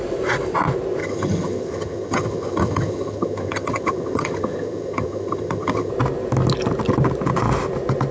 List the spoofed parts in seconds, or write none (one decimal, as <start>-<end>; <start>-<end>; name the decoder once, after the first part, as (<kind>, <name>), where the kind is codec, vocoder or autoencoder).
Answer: 1.0-5.9 (vocoder, HiFi-GAN)